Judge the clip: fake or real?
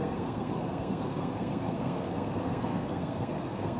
fake